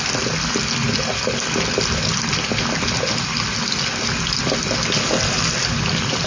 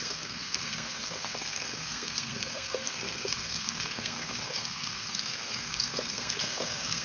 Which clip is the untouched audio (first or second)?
first